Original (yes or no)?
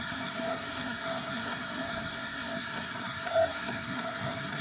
no